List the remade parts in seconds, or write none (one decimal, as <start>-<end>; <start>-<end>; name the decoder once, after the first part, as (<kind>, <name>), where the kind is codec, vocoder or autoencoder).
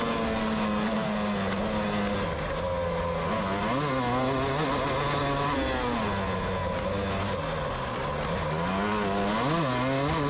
none